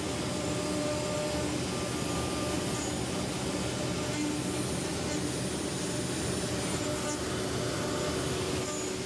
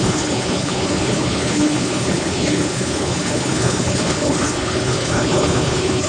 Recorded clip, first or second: first